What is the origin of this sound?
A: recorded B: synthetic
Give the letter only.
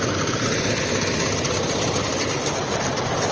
B